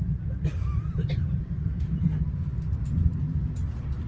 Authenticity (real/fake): real